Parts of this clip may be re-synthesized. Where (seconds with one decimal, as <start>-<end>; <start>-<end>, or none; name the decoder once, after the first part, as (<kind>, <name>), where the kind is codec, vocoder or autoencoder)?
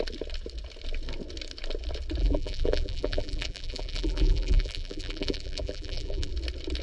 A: 2.2-6.3 (vocoder, BigVGAN v2)